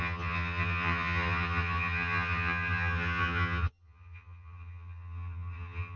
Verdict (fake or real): fake